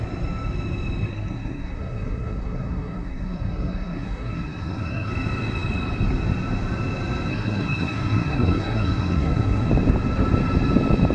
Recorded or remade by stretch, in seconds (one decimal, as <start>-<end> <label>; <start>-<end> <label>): 0.0-1.1 recorded; 1.1-5.1 remade; 5.1-7.3 recorded; 7.3-9.7 remade; 9.7-11.1 recorded